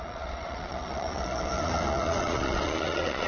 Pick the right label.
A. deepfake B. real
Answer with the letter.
A